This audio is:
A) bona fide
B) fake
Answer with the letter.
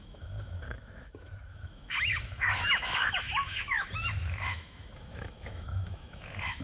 B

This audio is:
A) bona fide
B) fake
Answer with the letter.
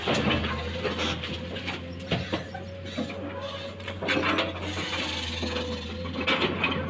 A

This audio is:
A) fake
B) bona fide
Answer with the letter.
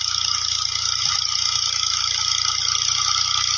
B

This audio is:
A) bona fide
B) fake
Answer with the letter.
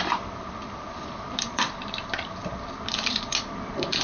B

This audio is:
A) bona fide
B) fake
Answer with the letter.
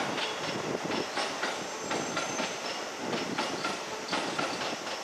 A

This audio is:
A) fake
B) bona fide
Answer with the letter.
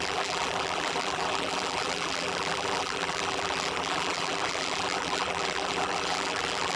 A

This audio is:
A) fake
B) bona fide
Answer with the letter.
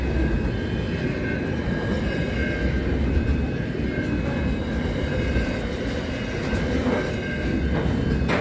B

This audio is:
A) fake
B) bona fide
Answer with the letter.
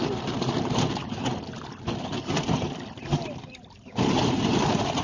B